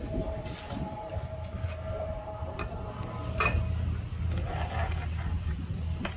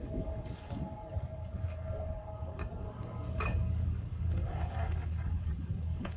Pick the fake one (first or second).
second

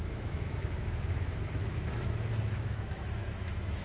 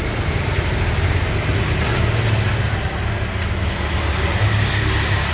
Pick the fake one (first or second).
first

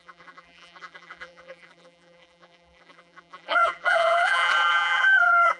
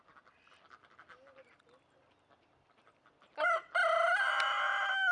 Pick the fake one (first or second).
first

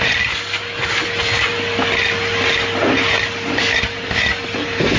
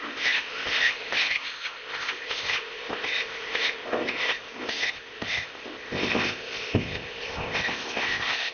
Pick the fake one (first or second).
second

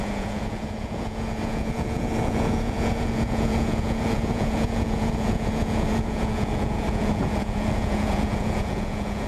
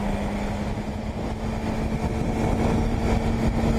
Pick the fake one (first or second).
first